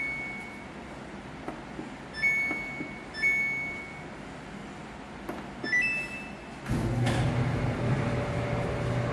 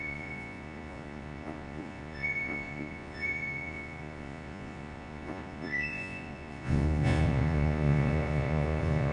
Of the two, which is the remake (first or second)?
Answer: second